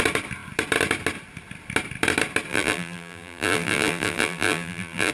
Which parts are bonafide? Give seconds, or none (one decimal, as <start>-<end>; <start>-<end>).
0.0-2.5